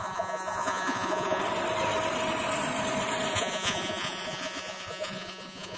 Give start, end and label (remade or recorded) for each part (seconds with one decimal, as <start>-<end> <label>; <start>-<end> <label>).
0.0-1.4 remade; 1.4-3.3 recorded; 3.3-5.8 remade